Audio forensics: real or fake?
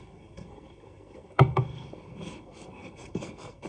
fake